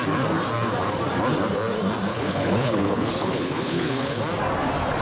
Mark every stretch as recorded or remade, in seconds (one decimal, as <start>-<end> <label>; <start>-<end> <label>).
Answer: 0.0-2.1 recorded; 2.1-4.2 remade; 4.2-5.0 recorded